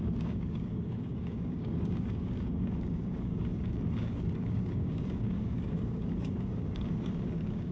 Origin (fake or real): fake